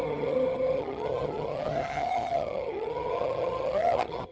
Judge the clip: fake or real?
fake